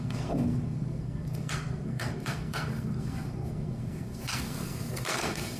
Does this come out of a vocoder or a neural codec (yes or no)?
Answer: yes